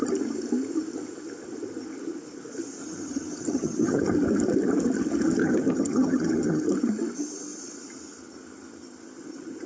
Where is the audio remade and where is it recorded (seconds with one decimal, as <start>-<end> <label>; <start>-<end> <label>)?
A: 0.0-2.8 recorded; 2.8-4.0 remade; 4.0-5.4 recorded; 5.4-6.6 remade; 6.6-9.7 recorded